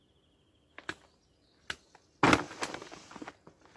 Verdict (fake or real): real